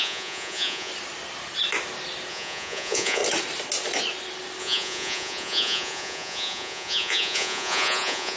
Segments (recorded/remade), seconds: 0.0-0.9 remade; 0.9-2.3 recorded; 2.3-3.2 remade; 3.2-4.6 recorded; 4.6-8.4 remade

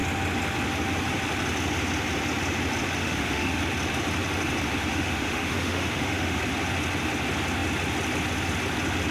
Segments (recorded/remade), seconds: 0.0-3.0 recorded; 3.0-3.6 remade; 3.6-4.9 recorded; 4.9-6.4 remade; 6.4-9.1 recorded

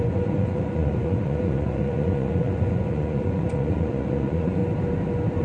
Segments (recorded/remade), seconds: 0.0-4.6 remade; 4.6-5.4 recorded

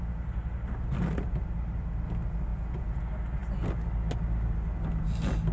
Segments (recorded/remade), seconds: 0.0-2.5 recorded; 2.5-3.0 remade; 3.0-5.5 recorded